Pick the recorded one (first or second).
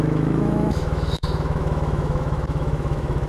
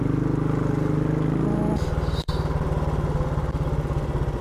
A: second